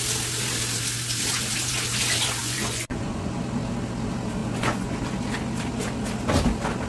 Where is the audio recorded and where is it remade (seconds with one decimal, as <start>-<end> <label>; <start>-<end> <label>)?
0.0-2.4 recorded; 2.4-3.4 remade; 3.4-4.4 recorded; 4.4-5.0 remade; 5.0-6.9 recorded